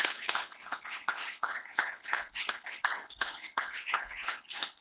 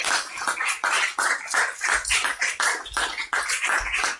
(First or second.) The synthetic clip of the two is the first